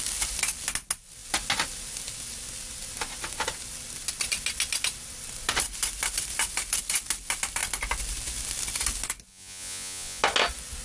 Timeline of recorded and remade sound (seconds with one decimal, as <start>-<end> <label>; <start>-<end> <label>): 0.0-9.3 recorded; 9.3-10.2 remade; 10.2-10.8 recorded